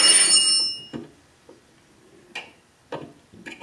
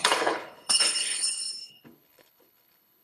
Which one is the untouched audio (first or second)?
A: first